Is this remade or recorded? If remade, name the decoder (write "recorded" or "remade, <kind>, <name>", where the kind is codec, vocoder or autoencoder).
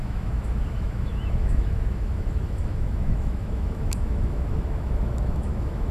remade, autoencoder, DAC-VAE